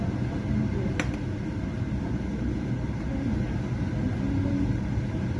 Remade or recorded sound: recorded